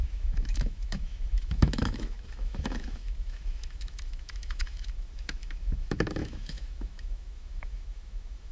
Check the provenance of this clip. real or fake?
fake